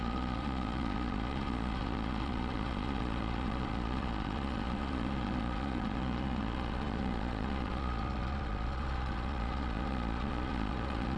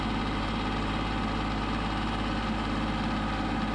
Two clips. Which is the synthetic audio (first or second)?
first